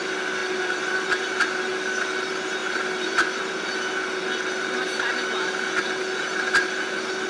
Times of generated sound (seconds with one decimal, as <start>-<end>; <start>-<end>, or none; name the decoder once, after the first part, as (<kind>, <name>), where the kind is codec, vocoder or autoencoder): 0.4-1.2 (vocoder, BigVGAN v2); 2.6-3.4